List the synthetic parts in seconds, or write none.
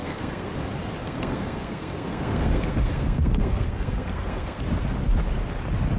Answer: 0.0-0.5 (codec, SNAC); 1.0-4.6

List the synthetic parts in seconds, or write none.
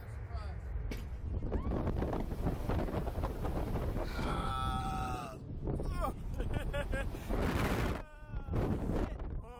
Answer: 4.0-4.5 (codec, SNAC)